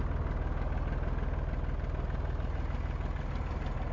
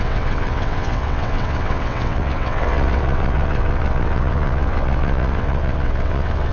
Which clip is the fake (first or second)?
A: second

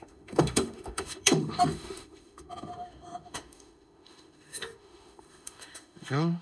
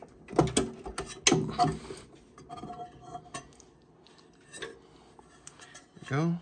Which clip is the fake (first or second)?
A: first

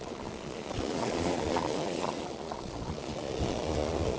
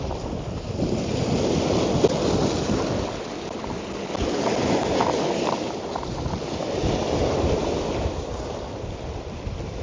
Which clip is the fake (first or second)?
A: first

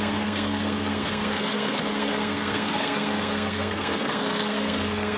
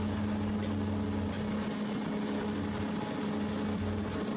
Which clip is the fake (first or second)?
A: first